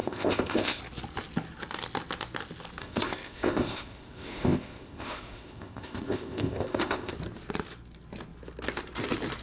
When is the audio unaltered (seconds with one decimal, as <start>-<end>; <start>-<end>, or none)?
0.8-2.8; 7.1-9.4